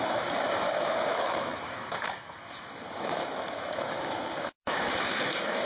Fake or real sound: fake